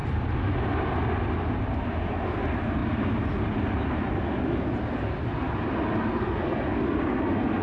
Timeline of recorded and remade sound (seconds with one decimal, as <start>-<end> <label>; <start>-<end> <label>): 0.0-7.6 recorded